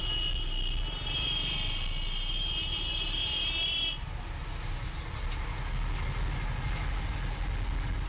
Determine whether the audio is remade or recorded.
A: recorded